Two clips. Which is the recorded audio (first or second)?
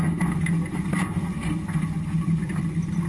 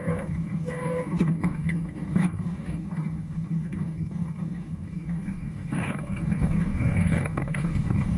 first